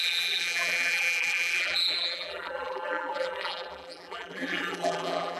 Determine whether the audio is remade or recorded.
remade